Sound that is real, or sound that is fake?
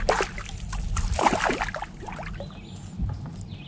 real